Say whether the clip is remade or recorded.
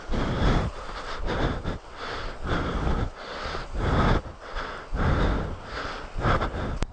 recorded